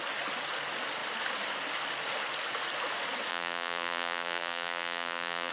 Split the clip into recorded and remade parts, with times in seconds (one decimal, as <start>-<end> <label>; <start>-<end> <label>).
0.0-3.3 recorded; 3.3-5.5 remade